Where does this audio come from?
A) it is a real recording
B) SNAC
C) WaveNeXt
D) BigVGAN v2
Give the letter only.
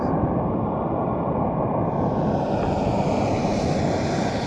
A